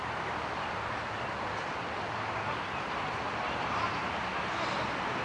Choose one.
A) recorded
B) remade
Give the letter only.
B